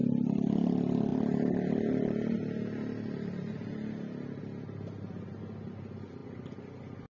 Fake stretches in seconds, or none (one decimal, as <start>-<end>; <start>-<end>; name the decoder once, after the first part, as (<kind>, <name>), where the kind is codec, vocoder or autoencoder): none

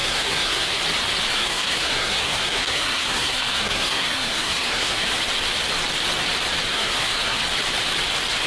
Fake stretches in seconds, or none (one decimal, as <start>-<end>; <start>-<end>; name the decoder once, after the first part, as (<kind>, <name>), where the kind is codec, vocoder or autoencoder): 0.0-0.8 (codec, SNAC); 1.3-5.1; 6.7-7.4

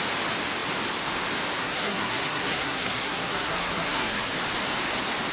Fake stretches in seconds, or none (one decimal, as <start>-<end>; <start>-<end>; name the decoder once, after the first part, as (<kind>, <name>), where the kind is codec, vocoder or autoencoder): 1.6-4.3 (codec, SNAC)

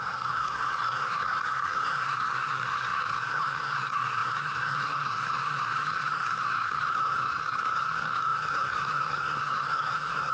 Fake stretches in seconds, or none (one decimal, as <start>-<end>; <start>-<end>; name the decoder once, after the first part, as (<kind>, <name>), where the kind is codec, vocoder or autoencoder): 0.0-10.3 (codec, SNAC)

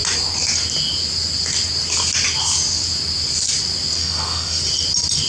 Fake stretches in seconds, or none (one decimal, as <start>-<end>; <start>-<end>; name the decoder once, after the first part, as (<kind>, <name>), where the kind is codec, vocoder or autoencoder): 4.0-4.6 (codec, SNAC)

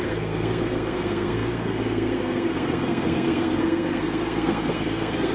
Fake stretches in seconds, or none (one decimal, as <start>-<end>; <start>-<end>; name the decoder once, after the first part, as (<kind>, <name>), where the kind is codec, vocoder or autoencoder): 0.0-5.3 (codec, SNAC)

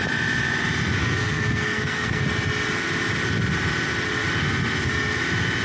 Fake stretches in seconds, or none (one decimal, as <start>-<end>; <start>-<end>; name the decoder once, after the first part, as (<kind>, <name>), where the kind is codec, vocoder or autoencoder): 1.0-2.2 (codec, SNAC)